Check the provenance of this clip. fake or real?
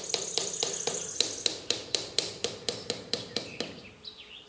fake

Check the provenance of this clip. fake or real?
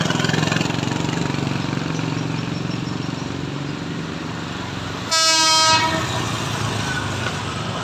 real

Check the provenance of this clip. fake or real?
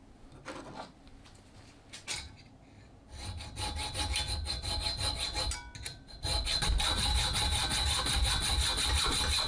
real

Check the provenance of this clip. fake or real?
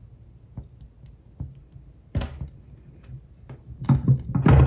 real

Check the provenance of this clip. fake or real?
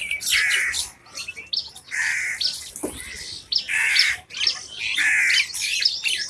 real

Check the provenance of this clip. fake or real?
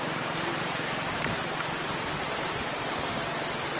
fake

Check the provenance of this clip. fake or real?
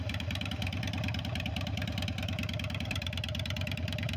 fake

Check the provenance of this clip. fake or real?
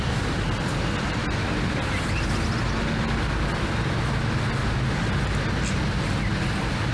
real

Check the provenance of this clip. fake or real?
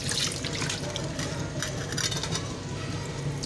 real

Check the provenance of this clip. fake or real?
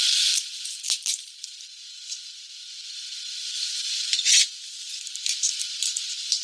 fake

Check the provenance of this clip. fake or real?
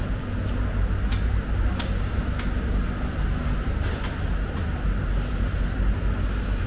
real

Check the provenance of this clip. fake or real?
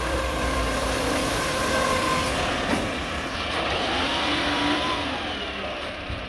fake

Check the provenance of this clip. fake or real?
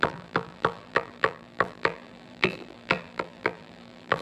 fake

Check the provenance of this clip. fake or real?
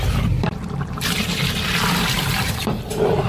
fake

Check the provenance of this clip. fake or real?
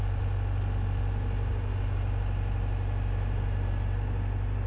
real